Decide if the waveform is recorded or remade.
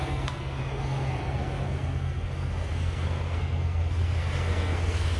remade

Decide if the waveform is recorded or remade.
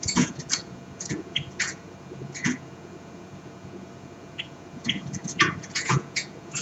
remade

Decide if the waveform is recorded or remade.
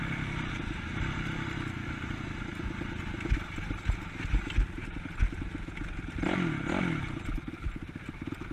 recorded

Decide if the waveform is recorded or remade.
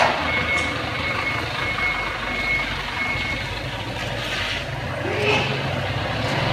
recorded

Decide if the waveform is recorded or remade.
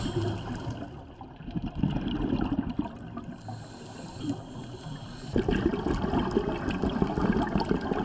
recorded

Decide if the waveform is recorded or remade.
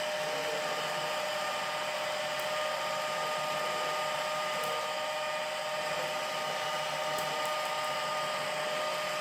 recorded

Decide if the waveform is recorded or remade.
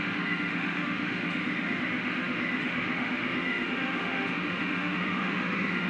remade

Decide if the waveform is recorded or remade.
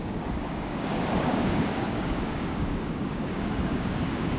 remade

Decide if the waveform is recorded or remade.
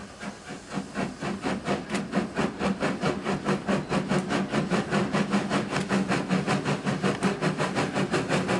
recorded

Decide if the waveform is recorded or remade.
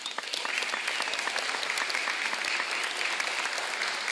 recorded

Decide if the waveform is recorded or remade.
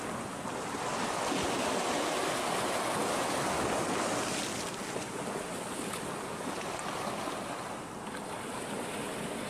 recorded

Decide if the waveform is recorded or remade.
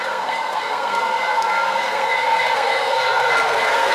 remade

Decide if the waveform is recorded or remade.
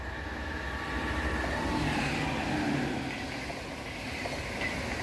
recorded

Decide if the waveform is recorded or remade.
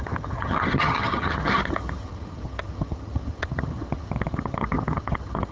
remade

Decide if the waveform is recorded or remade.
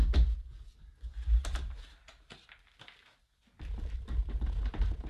recorded